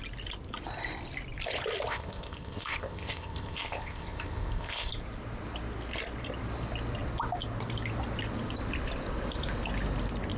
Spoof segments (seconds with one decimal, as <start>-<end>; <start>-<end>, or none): 1.9-4.9

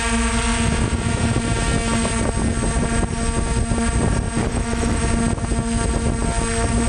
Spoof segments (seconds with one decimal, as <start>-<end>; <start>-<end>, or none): 4.4-5.0

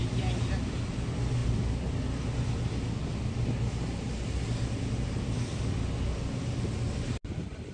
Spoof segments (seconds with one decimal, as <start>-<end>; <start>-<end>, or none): none

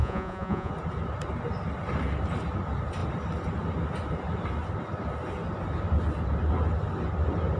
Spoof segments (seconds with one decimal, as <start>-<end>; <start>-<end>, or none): 0.0-0.7

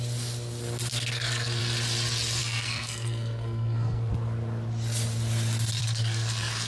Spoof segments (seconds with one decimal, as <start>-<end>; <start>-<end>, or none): 0.9-1.6; 2.4-4.1; 5.8-6.7

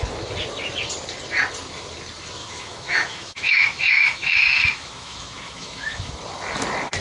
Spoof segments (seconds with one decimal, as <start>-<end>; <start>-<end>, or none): 2.4-6.1